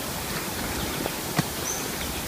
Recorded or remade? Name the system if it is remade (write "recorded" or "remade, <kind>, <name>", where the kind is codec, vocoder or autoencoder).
remade, vocoder, BigVGAN v2